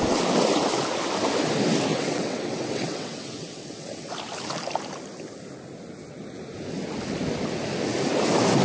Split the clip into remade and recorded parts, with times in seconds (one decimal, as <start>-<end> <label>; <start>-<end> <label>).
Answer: 0.0-1.9 recorded; 1.9-4.1 remade; 4.1-8.6 recorded